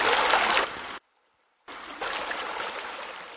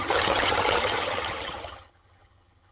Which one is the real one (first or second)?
first